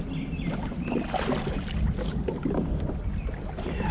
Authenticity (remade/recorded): recorded